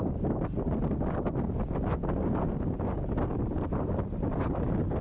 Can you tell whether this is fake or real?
real